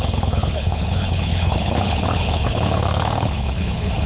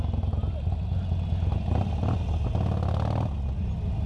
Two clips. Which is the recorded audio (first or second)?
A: second